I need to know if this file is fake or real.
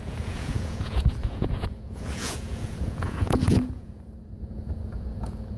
fake